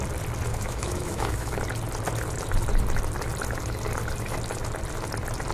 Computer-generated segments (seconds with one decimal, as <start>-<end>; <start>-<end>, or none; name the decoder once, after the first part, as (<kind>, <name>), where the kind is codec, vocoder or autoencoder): 0.5-1.6 (autoencoder, DAC-VAE)